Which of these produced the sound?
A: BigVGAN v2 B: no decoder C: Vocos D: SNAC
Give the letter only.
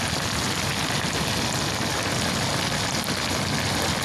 B